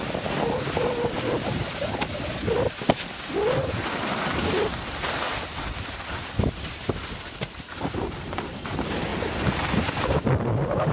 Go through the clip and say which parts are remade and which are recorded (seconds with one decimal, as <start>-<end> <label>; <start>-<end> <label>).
0.0-9.1 remade; 9.1-9.9 recorded; 9.9-10.9 remade